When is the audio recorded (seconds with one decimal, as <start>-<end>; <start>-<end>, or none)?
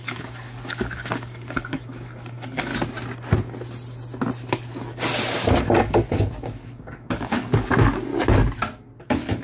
2.7-5.6; 8.1-9.0